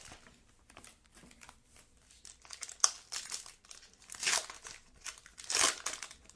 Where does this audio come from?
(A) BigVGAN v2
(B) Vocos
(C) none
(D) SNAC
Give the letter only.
C